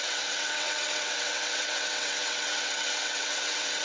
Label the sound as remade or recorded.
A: remade